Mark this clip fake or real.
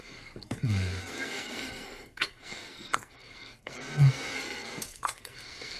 fake